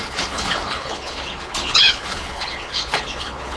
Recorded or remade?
remade